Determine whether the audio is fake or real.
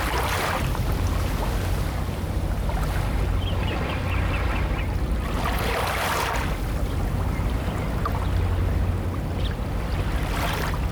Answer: real